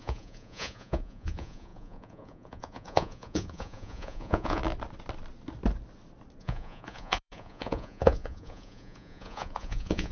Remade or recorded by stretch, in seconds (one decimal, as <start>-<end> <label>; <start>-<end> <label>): 0.0-4.6 remade; 4.6-6.4 recorded; 6.4-10.1 remade